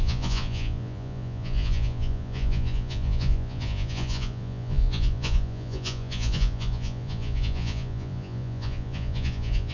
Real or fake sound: fake